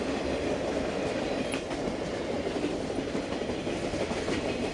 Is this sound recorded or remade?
recorded